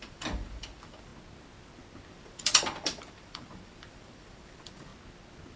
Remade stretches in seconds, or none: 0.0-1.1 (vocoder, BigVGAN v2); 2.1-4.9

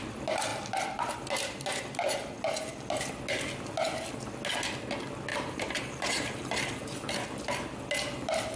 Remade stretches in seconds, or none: 5.3-6.6 (vocoder, BigVGAN v2)

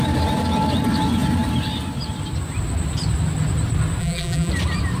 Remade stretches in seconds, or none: 4.0-4.5 (vocoder, BigVGAN v2)

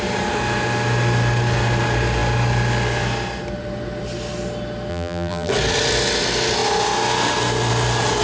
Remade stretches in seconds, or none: 4.9-5.5 (vocoder, BigVGAN v2)

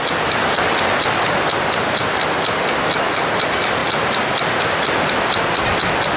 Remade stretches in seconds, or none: none

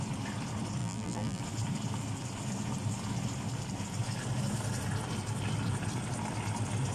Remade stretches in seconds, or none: 0.8-1.4 (vocoder, BigVGAN v2)

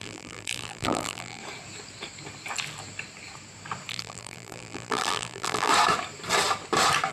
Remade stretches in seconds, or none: 0.0-1.4 (vocoder, BigVGAN v2); 3.9-5.7

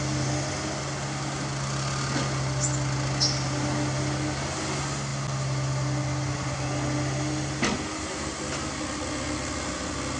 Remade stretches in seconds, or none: none